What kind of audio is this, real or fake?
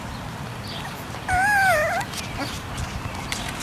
real